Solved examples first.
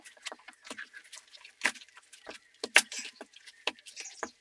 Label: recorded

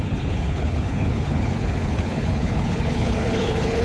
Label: remade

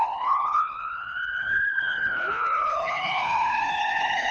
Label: remade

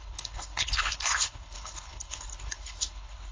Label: remade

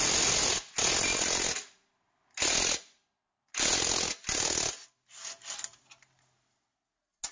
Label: recorded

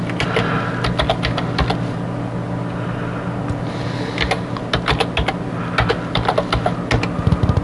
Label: recorded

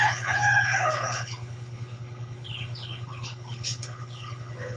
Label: remade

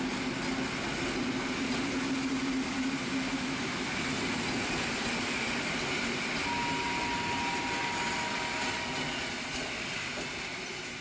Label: recorded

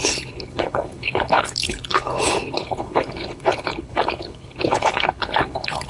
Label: remade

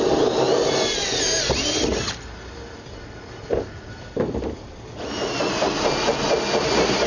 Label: recorded